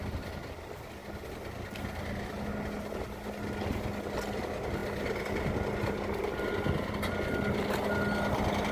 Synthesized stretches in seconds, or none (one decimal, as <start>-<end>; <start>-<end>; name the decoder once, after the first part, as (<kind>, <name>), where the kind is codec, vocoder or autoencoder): none